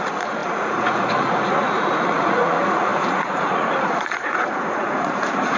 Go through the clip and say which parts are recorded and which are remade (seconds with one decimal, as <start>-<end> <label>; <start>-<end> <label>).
0.0-5.6 remade